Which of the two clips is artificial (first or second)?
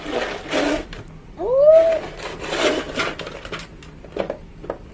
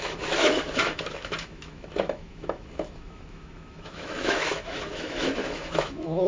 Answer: second